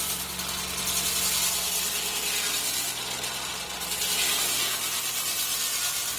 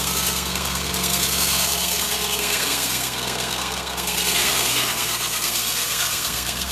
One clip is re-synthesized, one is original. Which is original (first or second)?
first